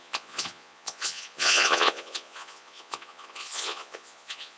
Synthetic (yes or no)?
yes